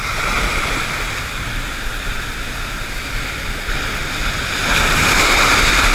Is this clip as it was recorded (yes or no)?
yes